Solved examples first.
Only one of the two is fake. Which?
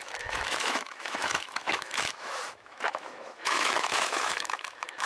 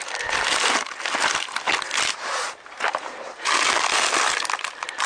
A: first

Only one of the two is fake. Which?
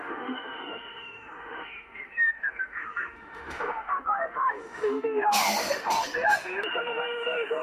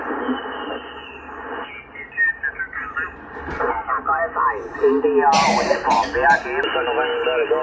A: first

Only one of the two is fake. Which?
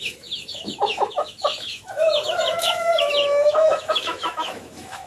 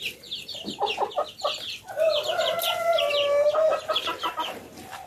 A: first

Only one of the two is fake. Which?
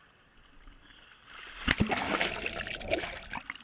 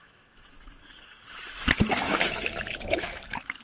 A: second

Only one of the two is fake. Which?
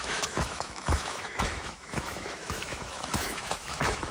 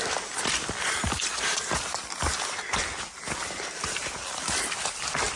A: first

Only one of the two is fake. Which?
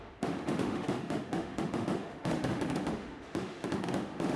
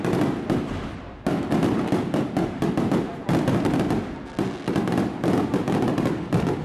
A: first